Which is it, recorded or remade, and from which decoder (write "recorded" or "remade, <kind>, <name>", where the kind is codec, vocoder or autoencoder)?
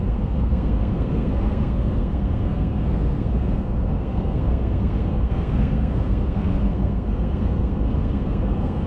remade, codec, SNAC